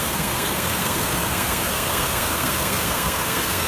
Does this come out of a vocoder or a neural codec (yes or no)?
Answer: yes